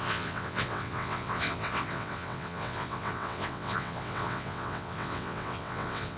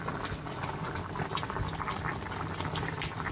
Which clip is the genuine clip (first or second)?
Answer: second